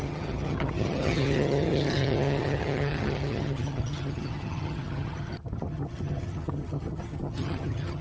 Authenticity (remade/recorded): remade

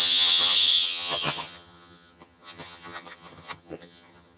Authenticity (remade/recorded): remade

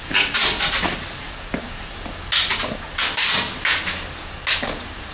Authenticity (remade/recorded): recorded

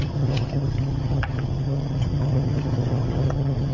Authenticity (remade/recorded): remade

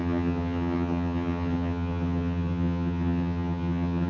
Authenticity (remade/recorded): remade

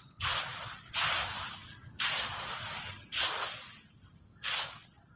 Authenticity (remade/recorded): recorded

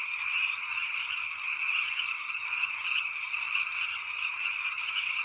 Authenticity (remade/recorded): remade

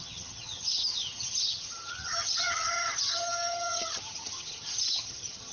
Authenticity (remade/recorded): remade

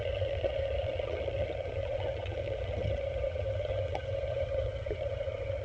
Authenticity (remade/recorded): remade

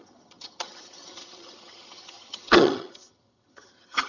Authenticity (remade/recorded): remade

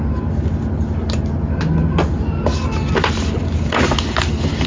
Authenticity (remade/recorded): recorded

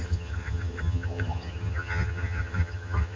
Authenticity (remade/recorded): remade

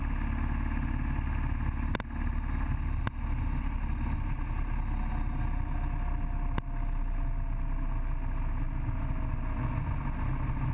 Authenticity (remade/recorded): recorded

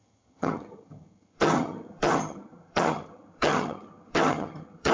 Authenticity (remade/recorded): remade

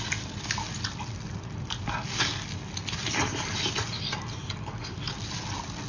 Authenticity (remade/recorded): recorded